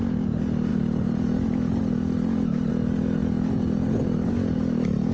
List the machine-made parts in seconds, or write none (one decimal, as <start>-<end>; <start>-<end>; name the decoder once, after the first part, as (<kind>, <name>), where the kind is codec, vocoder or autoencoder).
none